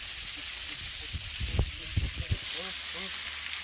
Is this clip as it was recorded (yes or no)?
yes